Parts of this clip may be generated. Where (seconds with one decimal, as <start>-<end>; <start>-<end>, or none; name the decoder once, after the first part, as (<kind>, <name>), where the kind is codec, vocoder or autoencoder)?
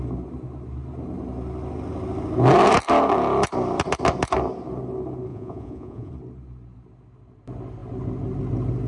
5.3-6.1 (vocoder, Vocos)